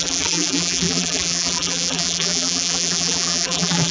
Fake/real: fake